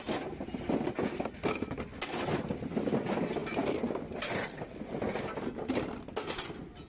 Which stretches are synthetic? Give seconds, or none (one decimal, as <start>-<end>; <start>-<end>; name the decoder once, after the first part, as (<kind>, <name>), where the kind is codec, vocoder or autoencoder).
none